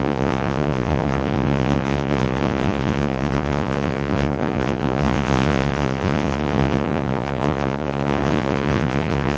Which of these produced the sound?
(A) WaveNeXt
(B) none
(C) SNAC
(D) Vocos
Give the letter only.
D